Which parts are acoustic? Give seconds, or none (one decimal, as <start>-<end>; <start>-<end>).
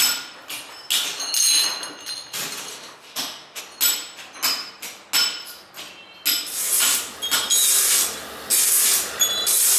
0.0-2.7; 3.6-9.8